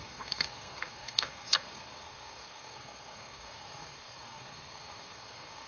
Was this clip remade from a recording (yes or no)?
yes